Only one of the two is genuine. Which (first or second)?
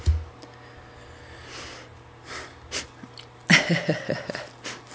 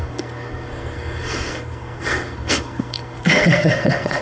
first